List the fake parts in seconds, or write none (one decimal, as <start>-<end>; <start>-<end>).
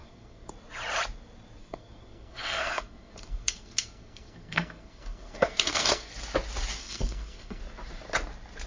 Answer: 0.0-0.5; 1.6-6.1; 6.8-7.6